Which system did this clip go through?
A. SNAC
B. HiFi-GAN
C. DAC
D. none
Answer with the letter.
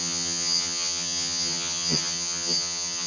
B